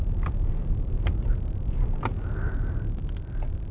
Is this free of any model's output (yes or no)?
yes